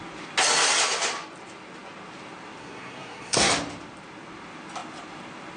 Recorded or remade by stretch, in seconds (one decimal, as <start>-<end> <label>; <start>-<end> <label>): 0.0-2.6 recorded; 2.6-3.5 remade; 3.5-5.6 recorded